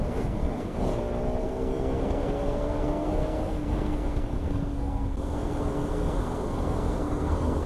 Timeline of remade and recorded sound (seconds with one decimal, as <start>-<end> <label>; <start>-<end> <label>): 0.0-0.9 remade; 0.9-1.4 recorded; 1.4-7.7 remade